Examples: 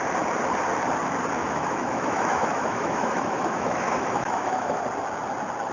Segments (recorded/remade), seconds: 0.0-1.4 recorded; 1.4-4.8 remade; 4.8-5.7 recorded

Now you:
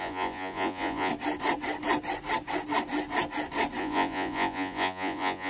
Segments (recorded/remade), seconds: 0.0-1.1 remade; 1.1-3.8 recorded; 3.8-5.5 remade

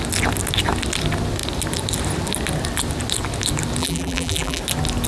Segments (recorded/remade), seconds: 0.0-3.8 recorded; 3.8-4.6 remade; 4.6-5.1 recorded

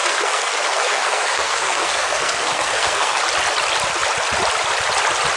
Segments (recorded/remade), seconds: 0.0-3.2 remade; 3.2-5.4 recorded

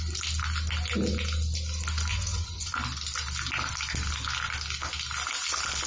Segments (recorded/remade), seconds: 0.0-2.1 recorded; 2.1-2.8 remade; 2.8-5.9 recorded